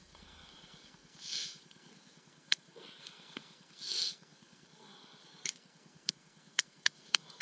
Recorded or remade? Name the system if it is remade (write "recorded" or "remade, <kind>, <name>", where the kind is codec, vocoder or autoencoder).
remade, codec, SNAC